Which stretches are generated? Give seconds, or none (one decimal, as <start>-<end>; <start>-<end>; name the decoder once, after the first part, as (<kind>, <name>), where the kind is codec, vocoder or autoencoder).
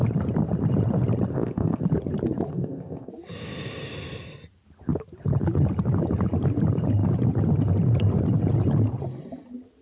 1.3-1.8 (codec, ZipCodec); 2.5-3.1